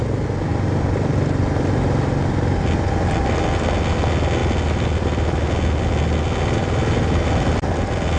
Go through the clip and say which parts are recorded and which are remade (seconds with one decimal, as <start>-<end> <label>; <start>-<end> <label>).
0.0-4.4 recorded; 4.4-5.8 remade; 5.8-6.6 recorded; 6.6-8.2 remade